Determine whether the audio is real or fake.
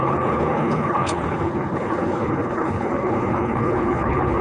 fake